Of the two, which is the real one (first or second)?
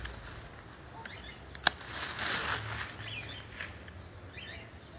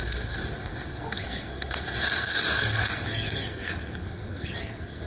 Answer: first